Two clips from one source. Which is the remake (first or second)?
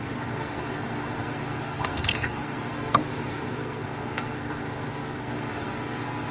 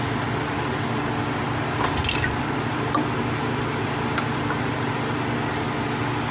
first